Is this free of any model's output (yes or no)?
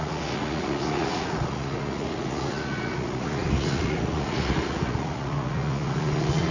no